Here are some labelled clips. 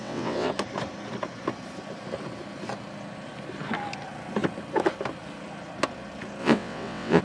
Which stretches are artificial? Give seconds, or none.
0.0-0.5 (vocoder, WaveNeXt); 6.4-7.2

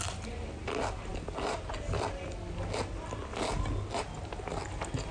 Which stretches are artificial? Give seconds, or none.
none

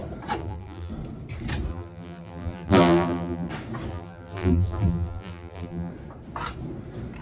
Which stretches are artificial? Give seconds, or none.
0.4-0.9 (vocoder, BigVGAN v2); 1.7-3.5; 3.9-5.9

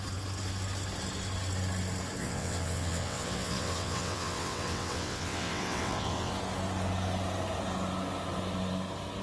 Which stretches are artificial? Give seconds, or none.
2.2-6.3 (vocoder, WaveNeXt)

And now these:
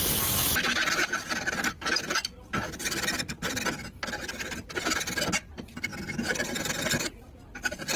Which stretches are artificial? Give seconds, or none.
none

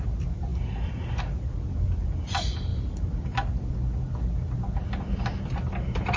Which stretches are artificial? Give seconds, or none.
none